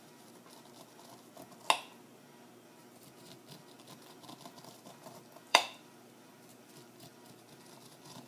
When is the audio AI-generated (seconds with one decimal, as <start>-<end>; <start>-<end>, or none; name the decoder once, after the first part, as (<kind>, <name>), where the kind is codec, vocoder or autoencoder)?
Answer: 2.8-3.6 (vocoder, BigVGAN v2); 5.5-8.3